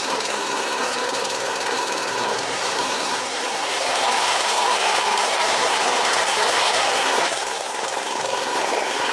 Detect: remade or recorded remade